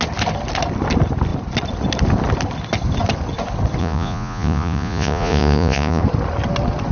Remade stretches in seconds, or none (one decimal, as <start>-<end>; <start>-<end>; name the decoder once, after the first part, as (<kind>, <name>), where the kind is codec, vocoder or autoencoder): 3.8-6.0 (vocoder, Vocos)